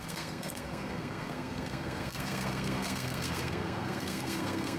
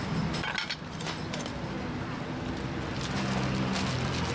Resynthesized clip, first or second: first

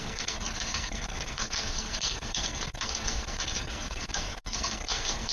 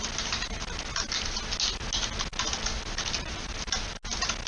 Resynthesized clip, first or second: first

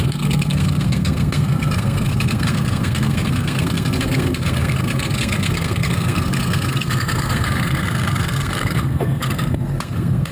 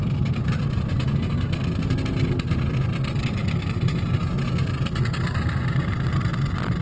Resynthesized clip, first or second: first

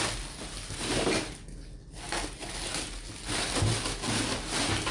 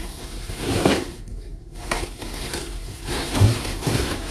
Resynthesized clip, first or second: second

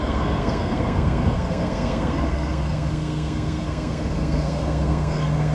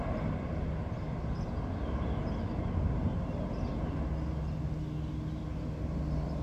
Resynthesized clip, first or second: first